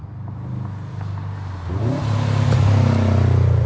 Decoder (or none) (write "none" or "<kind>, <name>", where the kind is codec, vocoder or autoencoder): none